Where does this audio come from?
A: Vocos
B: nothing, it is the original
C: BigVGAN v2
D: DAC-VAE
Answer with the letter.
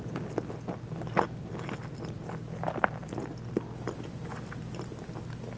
B